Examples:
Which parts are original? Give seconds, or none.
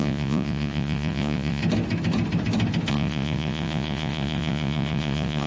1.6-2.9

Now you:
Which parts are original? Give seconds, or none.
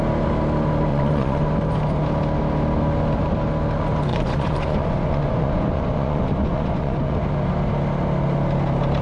0.0-0.9; 1.5-4.1; 7.1-9.0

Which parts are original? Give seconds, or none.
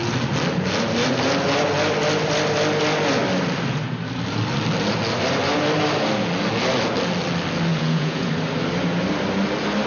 0.0-7.7; 8.3-9.9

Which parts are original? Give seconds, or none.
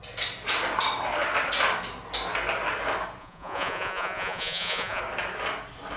0.0-3.2; 5.0-6.0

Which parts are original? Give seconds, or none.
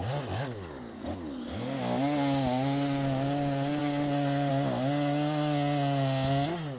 0.0-6.8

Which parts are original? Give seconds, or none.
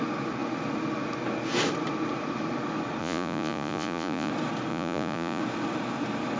0.0-3.0; 4.3-4.7; 5.4-6.4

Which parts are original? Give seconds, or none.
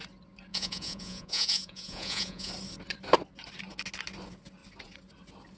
0.0-0.5; 2.5-5.6